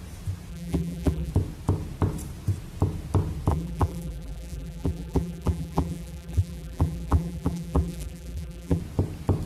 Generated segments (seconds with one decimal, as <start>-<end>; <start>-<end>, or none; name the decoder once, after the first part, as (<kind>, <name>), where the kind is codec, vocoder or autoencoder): 0.5-1.3 (vocoder, BigVGAN v2); 3.5-8.8